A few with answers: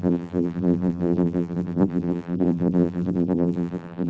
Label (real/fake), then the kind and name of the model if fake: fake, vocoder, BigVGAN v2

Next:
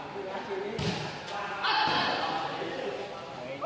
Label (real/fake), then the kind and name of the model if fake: real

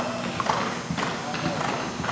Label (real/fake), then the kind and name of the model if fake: real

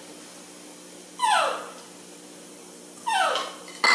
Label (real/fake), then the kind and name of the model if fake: real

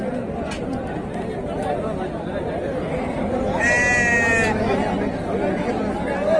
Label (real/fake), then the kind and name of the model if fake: real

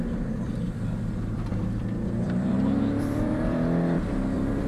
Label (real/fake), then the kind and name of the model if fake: fake, vocoder, BigVGAN v2